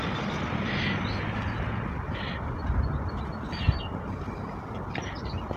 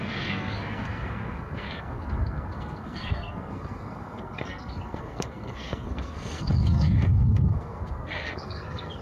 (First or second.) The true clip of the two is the first